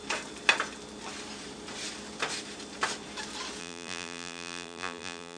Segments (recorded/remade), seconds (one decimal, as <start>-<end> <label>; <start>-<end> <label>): 0.0-3.6 recorded; 3.6-5.4 remade